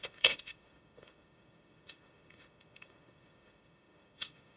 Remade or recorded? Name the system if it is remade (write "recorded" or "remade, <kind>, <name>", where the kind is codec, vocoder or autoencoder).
remade, autoencoder, DAC-VAE